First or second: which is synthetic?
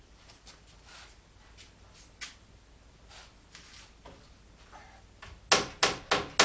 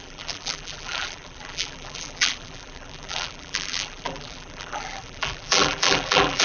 second